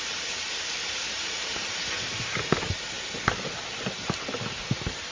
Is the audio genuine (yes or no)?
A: yes